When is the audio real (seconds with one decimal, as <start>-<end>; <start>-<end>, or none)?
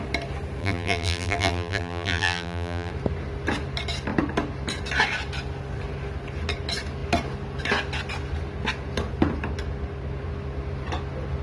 0.0-0.6; 2.9-11.4